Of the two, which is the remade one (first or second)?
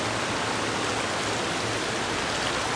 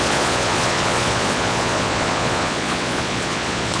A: second